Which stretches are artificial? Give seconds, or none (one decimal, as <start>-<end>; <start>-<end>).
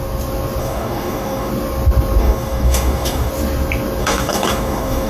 0.6-1.5; 2.2-3.3; 4.0-5.1